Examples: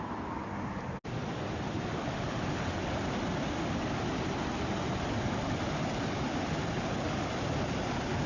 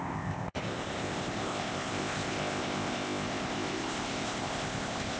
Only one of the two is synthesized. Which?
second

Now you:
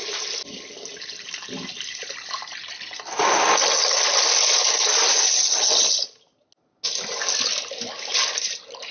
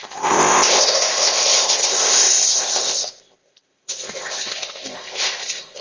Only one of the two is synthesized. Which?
second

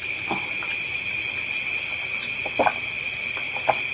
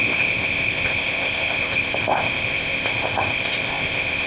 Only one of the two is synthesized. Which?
second